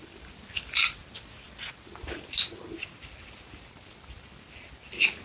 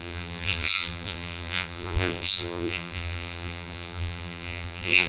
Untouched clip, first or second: first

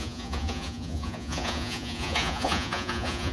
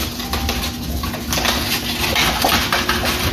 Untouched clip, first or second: second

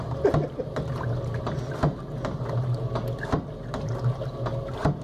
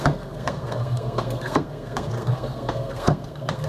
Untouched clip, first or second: first